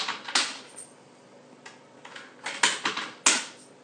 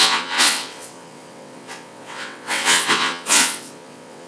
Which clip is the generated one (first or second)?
second